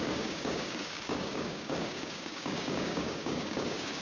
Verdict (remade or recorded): remade